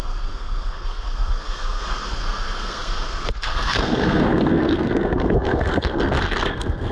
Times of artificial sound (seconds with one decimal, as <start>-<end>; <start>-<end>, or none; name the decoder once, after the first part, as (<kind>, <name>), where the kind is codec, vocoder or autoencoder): 0.0-6.9 (codec, SNAC)